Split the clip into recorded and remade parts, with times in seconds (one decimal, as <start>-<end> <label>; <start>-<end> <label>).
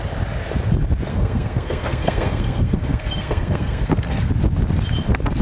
0.0-1.1 recorded; 1.1-4.3 remade; 4.3-5.4 recorded